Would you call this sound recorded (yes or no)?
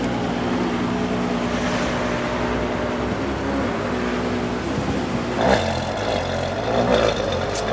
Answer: yes